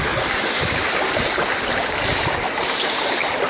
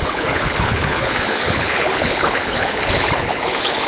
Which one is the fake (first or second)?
second